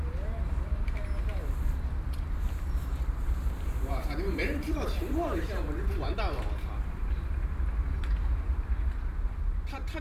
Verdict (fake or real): fake